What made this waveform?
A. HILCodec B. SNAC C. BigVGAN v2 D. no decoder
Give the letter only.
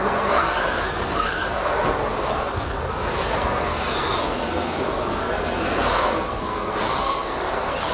B